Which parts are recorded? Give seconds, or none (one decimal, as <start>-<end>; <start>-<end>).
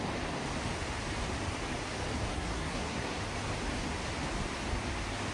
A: 0.0-2.3; 3.2-5.3